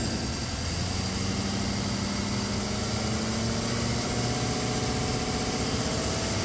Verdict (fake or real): real